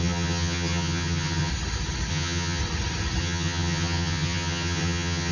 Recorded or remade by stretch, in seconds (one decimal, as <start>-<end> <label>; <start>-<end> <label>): 0.0-1.5 remade; 1.5-2.1 recorded; 2.1-2.6 remade; 2.6-3.2 recorded; 3.2-5.3 remade